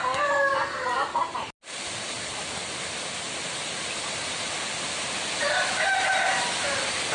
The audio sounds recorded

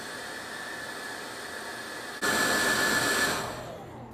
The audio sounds recorded